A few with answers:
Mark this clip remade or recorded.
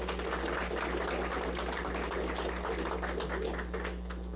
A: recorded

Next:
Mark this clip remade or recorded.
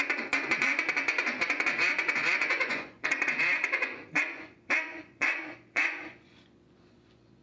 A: remade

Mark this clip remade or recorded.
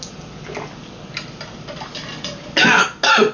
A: recorded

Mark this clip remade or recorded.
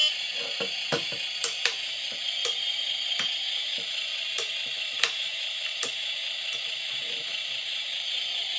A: recorded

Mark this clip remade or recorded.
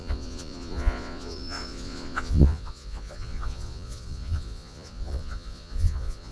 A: remade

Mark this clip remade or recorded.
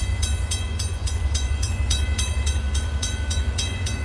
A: remade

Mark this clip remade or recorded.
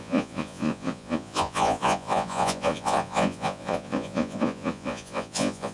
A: remade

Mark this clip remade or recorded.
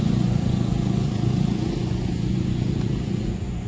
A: remade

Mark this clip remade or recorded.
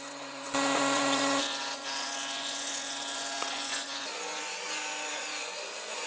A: remade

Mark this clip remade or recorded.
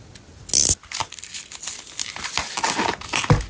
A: recorded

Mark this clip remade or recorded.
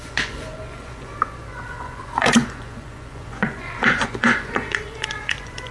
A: remade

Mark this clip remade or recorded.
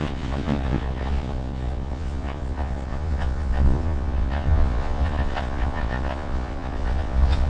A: remade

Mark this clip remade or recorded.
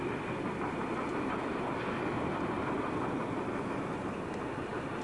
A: recorded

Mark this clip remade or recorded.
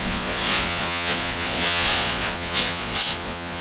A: remade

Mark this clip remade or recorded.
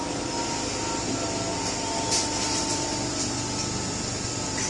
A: recorded